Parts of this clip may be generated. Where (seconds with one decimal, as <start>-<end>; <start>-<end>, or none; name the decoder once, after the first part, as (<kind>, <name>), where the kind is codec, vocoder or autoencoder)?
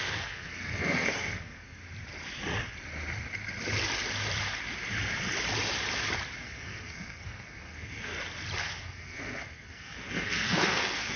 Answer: 0.0-1.8 (codec, SNAC); 6.4-8.1; 8.6-11.2